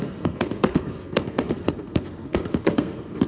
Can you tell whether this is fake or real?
fake